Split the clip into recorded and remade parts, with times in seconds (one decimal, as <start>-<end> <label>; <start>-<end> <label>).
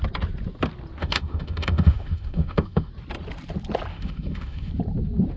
0.0-1.0 recorded; 1.0-2.9 remade; 2.9-3.9 recorded; 3.9-4.7 remade; 4.7-5.4 recorded